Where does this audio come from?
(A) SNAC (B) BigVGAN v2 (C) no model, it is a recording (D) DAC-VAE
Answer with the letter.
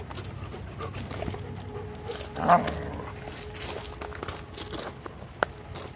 C